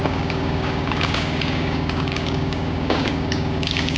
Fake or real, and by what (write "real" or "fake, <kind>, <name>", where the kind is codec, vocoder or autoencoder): fake, codec, DAC